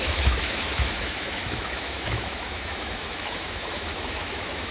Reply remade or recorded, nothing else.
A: remade